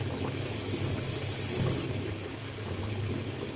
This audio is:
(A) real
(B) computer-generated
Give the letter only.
A